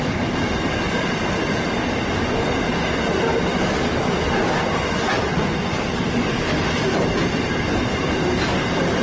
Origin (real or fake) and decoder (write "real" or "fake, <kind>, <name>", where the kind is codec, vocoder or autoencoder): real